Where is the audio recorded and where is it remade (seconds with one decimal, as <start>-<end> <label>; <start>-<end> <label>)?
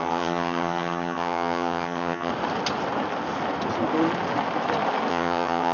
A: 0.0-2.3 remade; 2.3-5.1 recorded; 5.1-5.7 remade